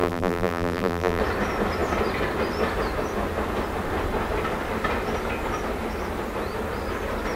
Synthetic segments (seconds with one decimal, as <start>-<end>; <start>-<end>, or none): 0.0-1.2